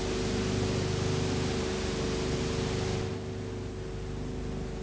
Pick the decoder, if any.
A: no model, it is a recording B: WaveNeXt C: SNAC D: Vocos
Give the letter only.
A